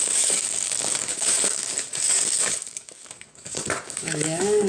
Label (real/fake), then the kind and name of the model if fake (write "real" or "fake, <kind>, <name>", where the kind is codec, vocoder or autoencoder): fake, codec, DAC